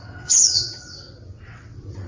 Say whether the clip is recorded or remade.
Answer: remade